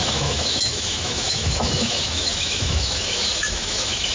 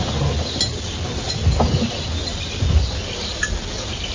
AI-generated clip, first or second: first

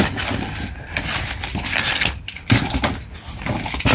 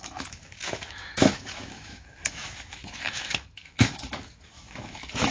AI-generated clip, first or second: second